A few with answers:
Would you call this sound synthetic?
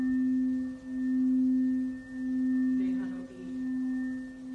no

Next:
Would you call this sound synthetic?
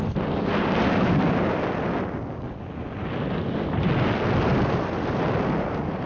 no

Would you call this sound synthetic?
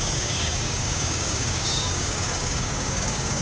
yes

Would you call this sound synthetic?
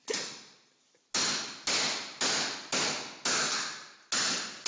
no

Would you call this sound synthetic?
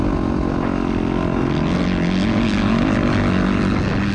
no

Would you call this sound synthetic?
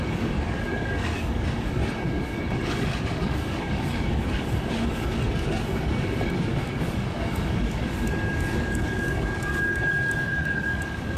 yes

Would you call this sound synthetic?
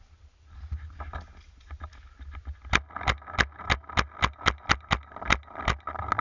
no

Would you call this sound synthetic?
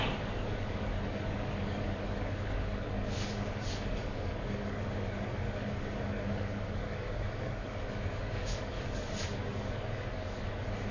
yes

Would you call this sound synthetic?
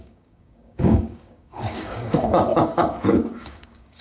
yes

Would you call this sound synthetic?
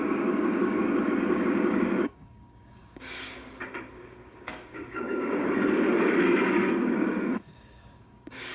yes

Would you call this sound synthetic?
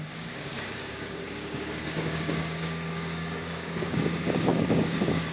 yes